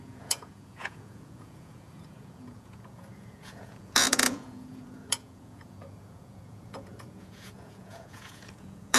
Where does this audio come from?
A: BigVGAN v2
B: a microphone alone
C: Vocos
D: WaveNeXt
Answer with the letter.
C